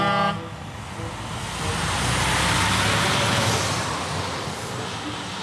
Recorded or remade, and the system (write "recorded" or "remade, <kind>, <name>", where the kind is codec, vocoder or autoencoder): recorded